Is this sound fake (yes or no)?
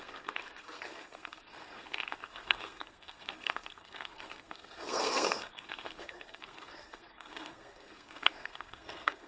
yes